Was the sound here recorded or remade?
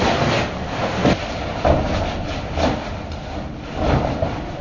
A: recorded